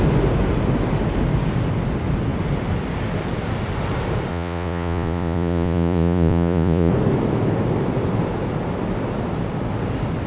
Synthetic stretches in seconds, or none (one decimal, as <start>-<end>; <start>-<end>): 4.3-6.9